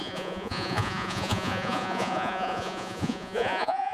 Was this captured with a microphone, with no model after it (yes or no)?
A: no